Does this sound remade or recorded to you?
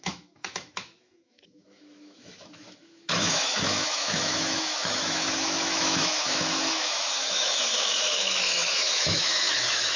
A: remade